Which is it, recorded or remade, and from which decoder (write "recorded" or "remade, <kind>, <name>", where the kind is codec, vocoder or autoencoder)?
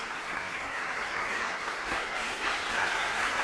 remade, codec, SNAC